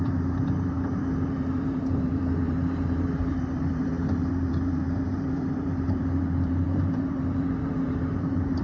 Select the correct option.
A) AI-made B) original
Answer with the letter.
A